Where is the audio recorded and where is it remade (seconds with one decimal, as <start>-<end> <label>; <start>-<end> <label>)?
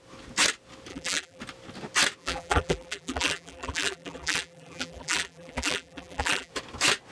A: 0.0-0.9 recorded; 0.9-1.4 remade; 1.4-2.2 recorded; 2.2-6.5 remade; 6.5-7.1 recorded